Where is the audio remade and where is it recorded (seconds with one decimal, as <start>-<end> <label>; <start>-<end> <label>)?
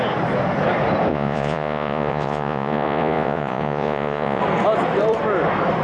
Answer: 0.0-1.1 recorded; 1.1-4.4 remade; 4.4-5.8 recorded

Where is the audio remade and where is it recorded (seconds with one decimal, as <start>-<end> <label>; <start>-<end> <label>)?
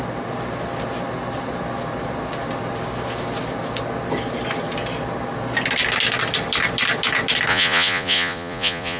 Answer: 0.0-7.5 recorded; 7.5-9.0 remade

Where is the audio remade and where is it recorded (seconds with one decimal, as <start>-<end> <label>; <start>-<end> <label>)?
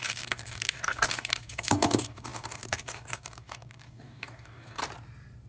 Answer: 0.0-4.8 remade; 4.8-5.5 recorded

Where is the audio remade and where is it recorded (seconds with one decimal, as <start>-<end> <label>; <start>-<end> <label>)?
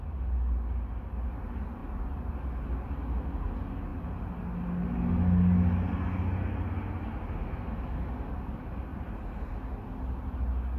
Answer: 0.0-10.8 recorded